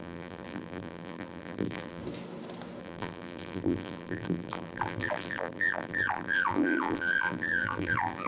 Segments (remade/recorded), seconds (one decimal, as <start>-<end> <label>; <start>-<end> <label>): 0.0-2.0 remade; 2.0-2.8 recorded; 2.8-8.3 remade